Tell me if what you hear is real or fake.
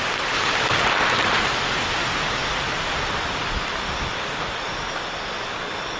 real